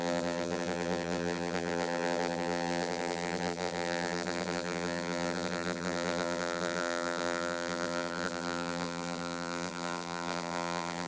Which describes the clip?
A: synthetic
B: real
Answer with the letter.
A